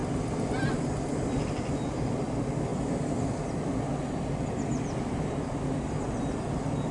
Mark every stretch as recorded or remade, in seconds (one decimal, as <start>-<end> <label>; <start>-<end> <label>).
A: 0.0-6.9 recorded